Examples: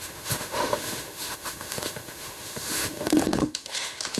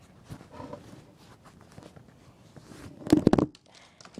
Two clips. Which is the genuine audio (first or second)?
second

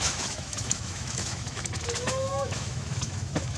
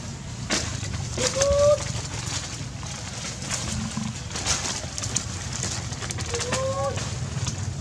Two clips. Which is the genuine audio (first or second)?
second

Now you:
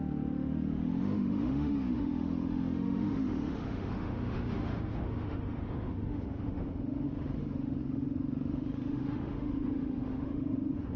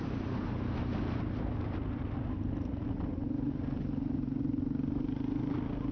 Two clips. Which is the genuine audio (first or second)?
second